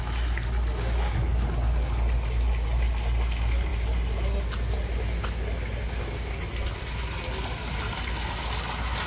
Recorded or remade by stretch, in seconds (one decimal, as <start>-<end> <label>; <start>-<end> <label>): 0.0-9.1 recorded